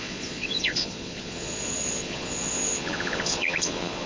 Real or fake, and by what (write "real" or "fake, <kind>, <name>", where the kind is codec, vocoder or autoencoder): fake, vocoder, Vocos